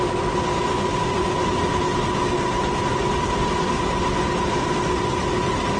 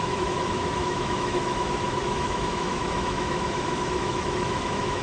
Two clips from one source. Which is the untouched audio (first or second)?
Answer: first